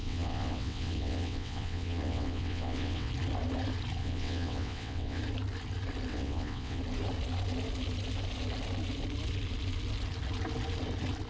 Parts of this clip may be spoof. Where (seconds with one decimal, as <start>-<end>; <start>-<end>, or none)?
0.0-3.1; 4.0-5.2; 6.1-6.8